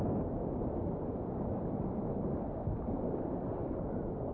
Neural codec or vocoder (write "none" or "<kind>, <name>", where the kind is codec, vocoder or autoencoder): none